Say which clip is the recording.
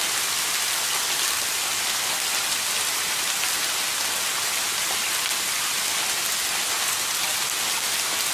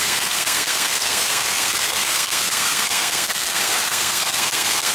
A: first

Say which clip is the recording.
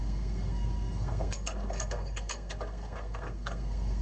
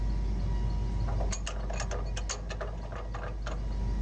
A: second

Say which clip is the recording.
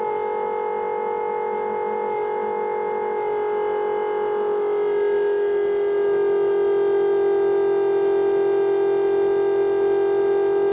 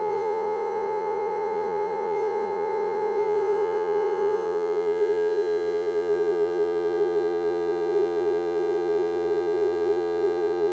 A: first